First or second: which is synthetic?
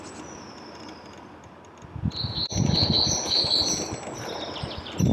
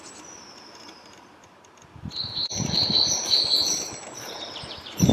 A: second